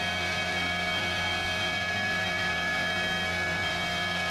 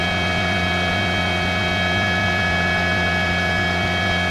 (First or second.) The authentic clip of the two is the second